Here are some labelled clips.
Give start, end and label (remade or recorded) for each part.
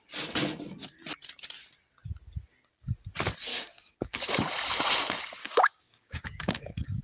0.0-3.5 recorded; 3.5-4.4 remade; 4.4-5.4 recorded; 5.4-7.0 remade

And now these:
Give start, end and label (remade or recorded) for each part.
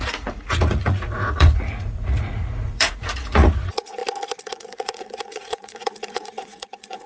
0.0-4.0 remade; 4.0-4.5 recorded; 4.5-7.1 remade